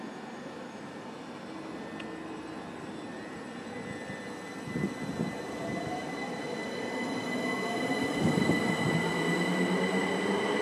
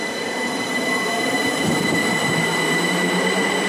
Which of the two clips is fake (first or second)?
second